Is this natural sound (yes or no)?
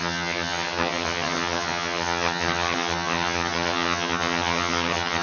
no